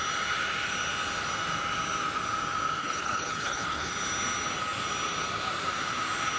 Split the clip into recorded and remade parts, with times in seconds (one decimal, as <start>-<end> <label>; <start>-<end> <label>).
0.0-2.8 recorded; 2.8-3.9 remade; 3.9-6.4 recorded